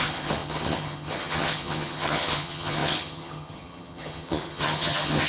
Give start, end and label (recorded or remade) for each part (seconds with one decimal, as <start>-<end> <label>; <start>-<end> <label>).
0.0-5.3 remade